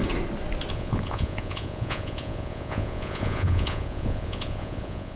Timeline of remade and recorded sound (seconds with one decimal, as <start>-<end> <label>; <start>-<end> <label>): 0.0-0.7 recorded; 0.7-5.2 remade